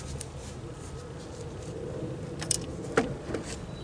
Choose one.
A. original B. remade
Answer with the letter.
A